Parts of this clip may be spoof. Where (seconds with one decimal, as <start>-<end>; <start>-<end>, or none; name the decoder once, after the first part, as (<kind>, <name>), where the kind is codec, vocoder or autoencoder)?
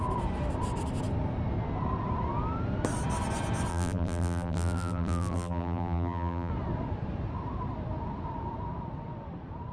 3.7-6.5 (vocoder, BigVGAN v2)